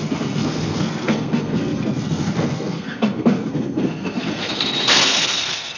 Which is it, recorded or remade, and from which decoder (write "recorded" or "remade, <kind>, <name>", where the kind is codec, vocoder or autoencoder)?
remade, codec, SNAC